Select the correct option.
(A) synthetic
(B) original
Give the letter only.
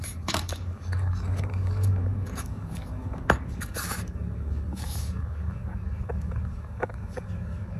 A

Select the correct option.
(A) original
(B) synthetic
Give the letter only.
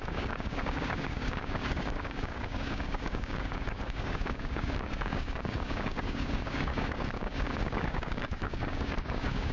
B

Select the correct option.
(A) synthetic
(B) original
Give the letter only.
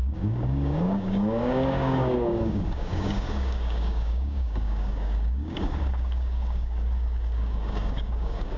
A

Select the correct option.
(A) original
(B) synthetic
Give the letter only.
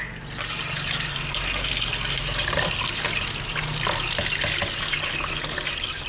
A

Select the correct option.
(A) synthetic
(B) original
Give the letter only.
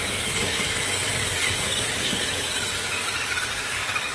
A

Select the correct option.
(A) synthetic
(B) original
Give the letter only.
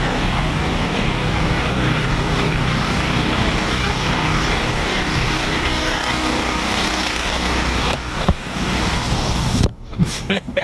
A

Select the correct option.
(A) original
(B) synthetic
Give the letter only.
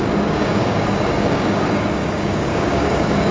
B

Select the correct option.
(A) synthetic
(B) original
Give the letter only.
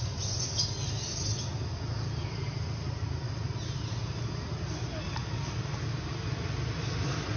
B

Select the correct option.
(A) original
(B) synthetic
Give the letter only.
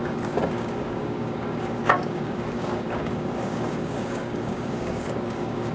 B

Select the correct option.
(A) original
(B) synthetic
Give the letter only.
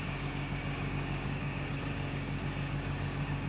B